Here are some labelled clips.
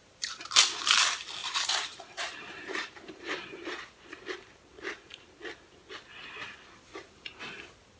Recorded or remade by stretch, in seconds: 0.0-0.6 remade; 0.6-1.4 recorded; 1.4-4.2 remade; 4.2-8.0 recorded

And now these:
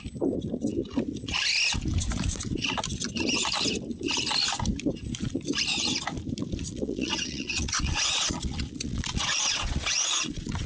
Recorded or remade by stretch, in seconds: 0.0-6.7 recorded; 6.7-10.7 remade

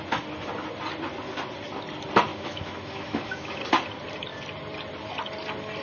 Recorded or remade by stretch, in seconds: 0.0-2.3 recorded; 2.3-3.6 remade; 3.6-5.8 recorded

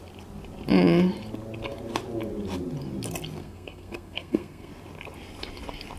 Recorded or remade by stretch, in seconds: 0.0-3.4 recorded; 3.4-4.7 remade; 4.7-6.0 recorded

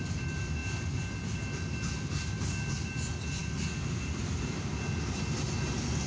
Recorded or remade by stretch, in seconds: 0.0-6.1 recorded

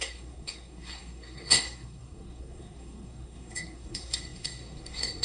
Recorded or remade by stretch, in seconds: 0.0-5.2 remade

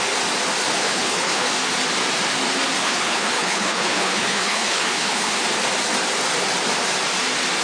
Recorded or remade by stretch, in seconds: 0.0-0.8 recorded; 0.8-1.5 remade; 1.5-2.8 recorded; 2.8-5.4 remade; 5.4-7.6 recorded